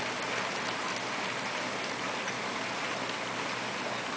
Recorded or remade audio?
recorded